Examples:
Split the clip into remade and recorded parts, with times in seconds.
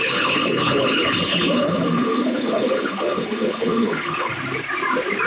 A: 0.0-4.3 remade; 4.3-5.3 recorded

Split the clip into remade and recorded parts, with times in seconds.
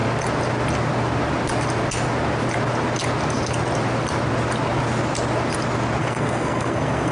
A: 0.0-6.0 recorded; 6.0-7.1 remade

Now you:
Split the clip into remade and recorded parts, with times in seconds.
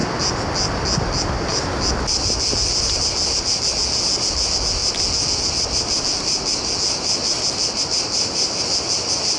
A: 0.0-9.4 recorded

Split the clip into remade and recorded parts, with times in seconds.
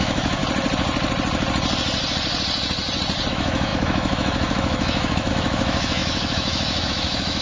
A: 0.0-0.4 remade; 0.4-3.3 recorded; 3.3-7.4 remade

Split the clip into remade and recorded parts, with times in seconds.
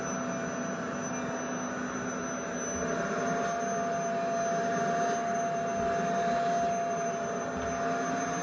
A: 0.0-8.4 recorded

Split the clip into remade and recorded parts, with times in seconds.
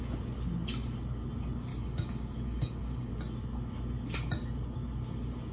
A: 0.0-1.7 recorded; 1.7-3.1 remade; 3.1-5.5 recorded